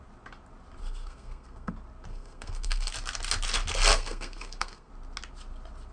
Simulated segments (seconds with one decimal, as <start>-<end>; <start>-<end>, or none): 0.8-1.7; 2.1-2.9; 3.9-4.9